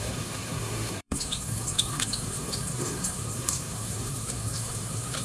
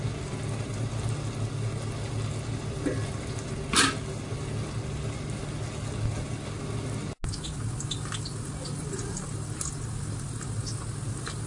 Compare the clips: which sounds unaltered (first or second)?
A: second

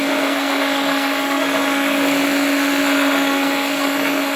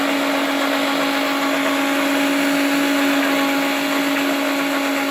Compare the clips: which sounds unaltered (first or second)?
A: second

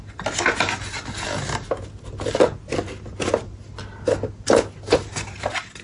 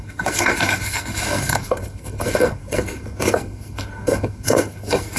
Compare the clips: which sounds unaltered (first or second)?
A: first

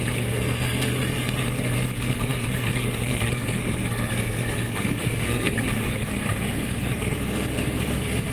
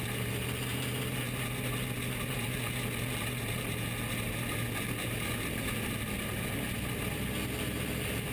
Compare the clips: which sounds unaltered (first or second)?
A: second